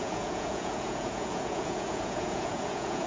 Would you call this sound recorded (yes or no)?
no